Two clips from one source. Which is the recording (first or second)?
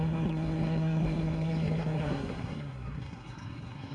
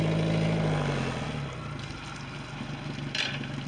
second